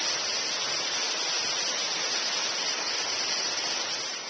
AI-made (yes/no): no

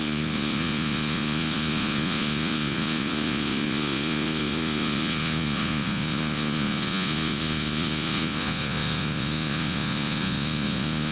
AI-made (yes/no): yes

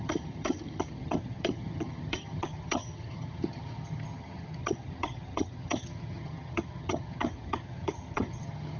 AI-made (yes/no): yes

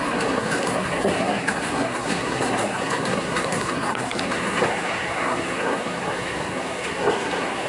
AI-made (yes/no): yes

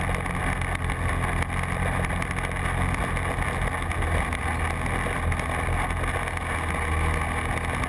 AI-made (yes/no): no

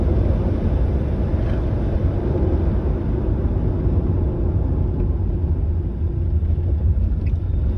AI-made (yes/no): no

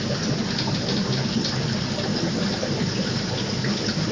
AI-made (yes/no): no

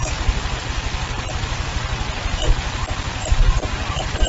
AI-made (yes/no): yes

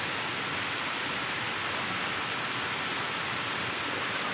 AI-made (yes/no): no